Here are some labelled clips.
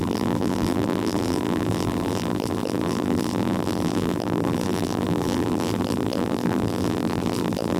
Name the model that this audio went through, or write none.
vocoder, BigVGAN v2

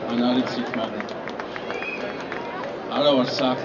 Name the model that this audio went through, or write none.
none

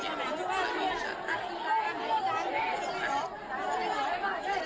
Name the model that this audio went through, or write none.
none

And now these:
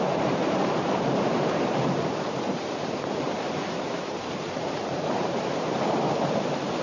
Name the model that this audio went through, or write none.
vocoder, BigVGAN v2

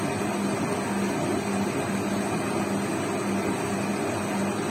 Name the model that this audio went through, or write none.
none